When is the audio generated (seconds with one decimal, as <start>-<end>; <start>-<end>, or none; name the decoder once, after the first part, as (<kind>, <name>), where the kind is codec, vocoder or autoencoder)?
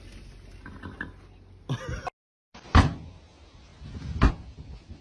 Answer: none